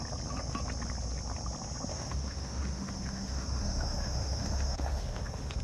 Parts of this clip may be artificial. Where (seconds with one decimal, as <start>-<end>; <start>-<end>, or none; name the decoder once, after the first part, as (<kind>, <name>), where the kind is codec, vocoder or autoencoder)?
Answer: 1.9-5.6 (autoencoder, DAC-VAE)